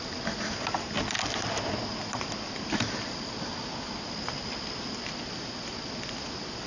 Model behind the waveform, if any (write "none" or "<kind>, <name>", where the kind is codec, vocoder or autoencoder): none